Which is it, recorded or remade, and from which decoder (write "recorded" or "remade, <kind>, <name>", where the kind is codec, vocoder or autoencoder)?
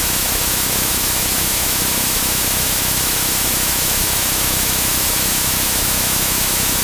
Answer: remade, autoencoder, DAC-VAE